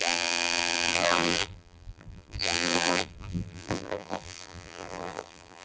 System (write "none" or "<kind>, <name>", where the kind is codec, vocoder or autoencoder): vocoder, BigVGAN v2